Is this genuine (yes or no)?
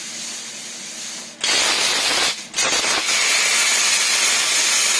yes